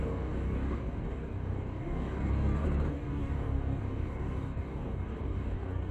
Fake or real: fake